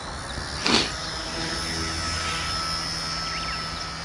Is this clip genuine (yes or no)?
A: yes